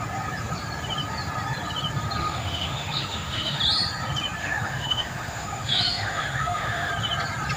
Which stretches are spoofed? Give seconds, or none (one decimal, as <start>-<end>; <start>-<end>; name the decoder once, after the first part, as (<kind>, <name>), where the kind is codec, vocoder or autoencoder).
2.2-3.6 (autoencoder, DAC-VAE); 4.4-6.9